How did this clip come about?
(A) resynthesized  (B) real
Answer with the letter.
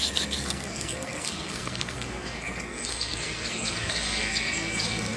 A